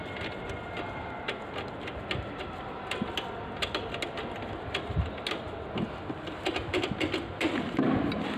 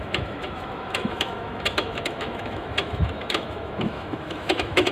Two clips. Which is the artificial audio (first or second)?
second